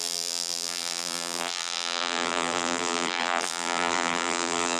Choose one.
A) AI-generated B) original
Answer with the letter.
A